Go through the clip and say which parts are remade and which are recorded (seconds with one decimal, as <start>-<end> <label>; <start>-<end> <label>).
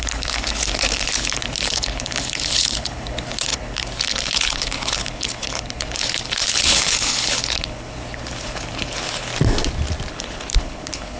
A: 0.0-9.3 remade; 9.3-10.1 recorded; 10.1-11.2 remade